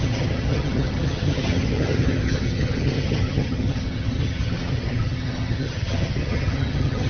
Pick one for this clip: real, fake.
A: fake